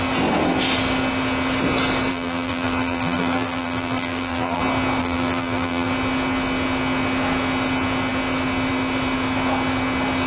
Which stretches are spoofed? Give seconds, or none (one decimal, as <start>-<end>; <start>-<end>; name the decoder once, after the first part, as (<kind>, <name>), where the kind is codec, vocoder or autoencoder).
2.1-4.6 (vocoder, BigVGAN v2); 5.0-5.9